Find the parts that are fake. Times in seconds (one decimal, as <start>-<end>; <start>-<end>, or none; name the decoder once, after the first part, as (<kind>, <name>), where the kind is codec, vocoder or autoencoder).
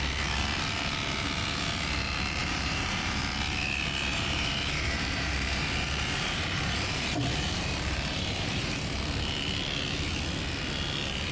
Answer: 2.4-3.2 (vocoder, BigVGAN v2); 4.1-9.0